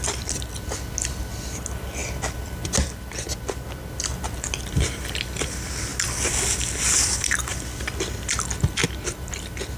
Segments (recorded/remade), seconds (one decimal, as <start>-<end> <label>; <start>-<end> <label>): 0.0-9.8 recorded